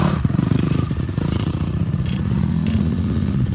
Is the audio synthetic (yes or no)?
yes